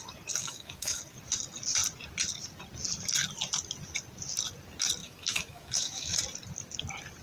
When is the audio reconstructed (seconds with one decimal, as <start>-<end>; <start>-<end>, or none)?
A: 0.4-1.0; 5.0-6.2